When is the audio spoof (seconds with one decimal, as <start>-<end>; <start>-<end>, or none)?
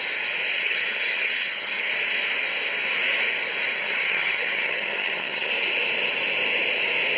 0.5-1.9; 3.8-5.5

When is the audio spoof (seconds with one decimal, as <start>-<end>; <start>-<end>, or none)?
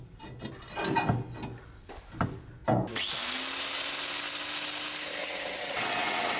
5.2-6.4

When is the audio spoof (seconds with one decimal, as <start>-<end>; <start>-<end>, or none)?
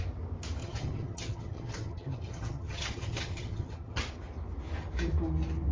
0.6-4.0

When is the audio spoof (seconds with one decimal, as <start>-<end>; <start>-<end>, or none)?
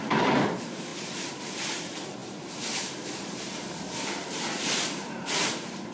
0.0-5.9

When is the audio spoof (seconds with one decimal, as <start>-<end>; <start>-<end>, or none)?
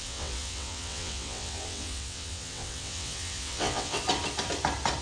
0.0-4.0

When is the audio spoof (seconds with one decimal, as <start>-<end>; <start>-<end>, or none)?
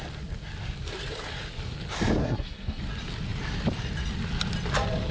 2.2-2.8